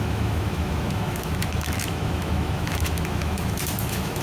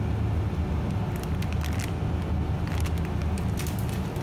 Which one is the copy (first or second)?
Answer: first